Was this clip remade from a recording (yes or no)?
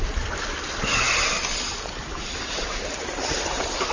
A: no